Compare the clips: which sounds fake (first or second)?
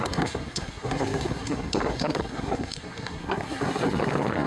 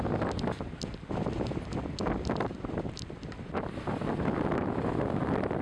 first